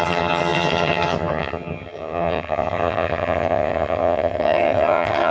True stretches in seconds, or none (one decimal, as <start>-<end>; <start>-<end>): none